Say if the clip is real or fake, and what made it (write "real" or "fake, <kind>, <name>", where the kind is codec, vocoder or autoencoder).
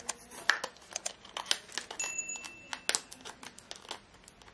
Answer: real